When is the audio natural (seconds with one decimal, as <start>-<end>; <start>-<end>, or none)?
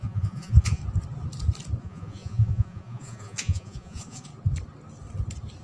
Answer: 0.8-1.8; 4.3-5.6